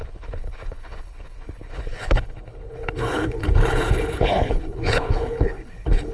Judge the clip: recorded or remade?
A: remade